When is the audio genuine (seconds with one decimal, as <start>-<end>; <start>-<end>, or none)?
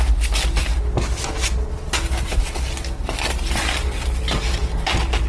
0.0-5.3